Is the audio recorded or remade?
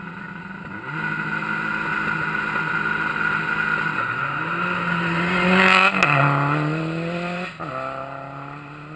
recorded